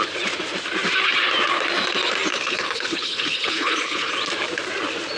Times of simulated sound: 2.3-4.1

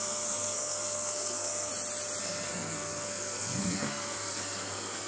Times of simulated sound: 0.0-1.7; 2.2-5.1

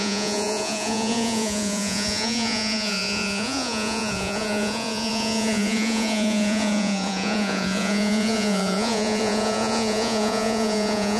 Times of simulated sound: 0.0-11.2

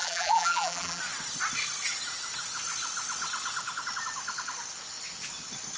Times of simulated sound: 0.0-1.0

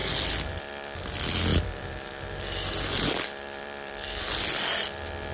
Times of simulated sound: 0.0-0.7; 1.5-4.7

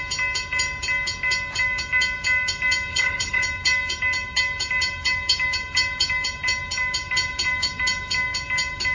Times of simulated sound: 2.9-3.4